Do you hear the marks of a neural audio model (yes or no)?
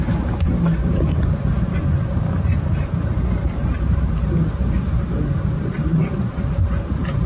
yes